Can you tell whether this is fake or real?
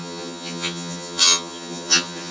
fake